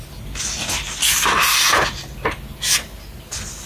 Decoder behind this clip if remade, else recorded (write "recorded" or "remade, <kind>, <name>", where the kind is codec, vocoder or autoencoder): recorded